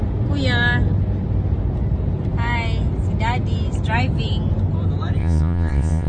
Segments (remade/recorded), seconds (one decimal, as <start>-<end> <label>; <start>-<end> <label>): 0.0-5.2 recorded; 5.2-6.1 remade